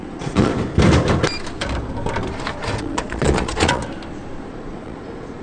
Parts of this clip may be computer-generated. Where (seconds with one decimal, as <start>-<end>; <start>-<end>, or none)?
0.0-0.5; 2.8-3.8; 4.5-5.4